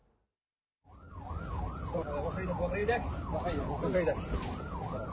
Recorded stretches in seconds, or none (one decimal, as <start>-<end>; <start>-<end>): 0.0-5.1